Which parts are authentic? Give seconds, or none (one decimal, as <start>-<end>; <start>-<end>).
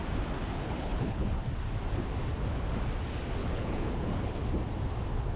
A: 0.0-0.5; 1.4-3.4; 4.5-5.4